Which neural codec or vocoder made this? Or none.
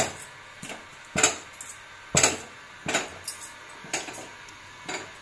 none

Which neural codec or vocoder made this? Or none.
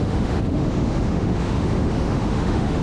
autoencoder, DAC-VAE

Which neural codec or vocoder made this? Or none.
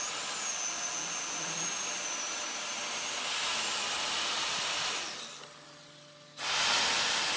none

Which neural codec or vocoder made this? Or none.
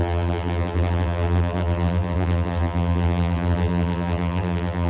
vocoder, BigVGAN v2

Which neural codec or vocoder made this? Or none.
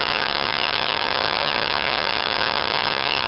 vocoder, HiFi-GAN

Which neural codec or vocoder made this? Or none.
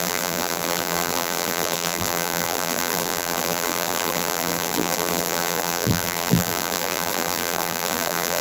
vocoder, BigVGAN v2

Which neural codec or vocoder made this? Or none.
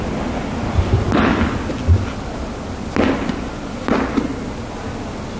none